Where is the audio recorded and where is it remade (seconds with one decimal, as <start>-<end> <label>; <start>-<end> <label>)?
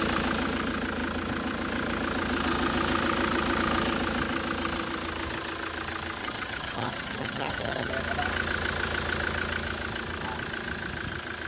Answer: 0.0-6.2 recorded; 6.2-7.9 remade; 7.9-11.5 recorded